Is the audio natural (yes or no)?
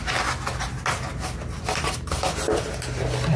yes